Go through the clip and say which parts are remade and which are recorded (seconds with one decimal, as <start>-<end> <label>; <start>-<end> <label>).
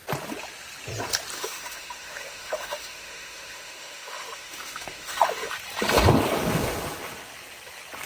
0.0-1.3 recorded; 1.3-5.5 remade; 5.5-8.1 recorded